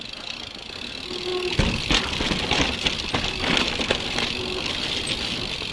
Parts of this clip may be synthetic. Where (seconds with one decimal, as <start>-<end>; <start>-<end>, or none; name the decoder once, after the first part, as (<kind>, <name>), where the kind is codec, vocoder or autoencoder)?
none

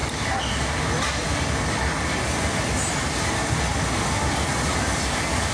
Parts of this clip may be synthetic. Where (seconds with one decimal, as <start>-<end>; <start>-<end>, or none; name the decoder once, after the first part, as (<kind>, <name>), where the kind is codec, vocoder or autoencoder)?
none

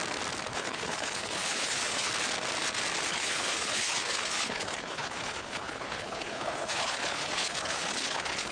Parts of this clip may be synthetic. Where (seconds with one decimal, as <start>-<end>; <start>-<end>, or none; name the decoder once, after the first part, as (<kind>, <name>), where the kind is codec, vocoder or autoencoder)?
0.5-2.1 (codec, HILCodec); 3.1-8.5